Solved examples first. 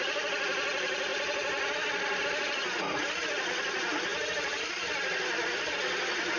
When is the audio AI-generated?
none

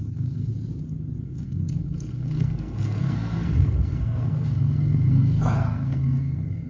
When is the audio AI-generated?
0.0-0.5 (codec, SNAC); 1.2-6.7

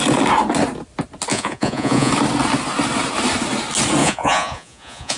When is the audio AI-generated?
1.3-2.1 (vocoder, Vocos); 4.0-5.2

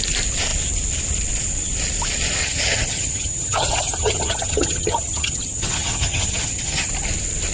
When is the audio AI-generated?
2.4-6.9 (vocoder, HiFi-GAN)